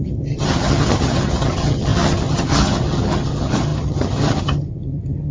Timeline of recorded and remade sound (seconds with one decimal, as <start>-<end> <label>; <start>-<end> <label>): 0.0-5.3 remade